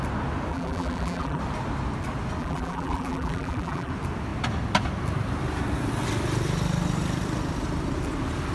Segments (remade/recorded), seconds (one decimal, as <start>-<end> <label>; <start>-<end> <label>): 0.0-0.5 recorded; 0.5-1.4 remade; 1.4-2.4 recorded; 2.4-3.9 remade; 3.9-8.5 recorded